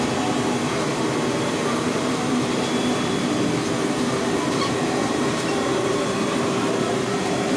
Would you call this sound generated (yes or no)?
yes